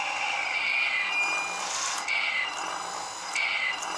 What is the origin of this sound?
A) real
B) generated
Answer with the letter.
A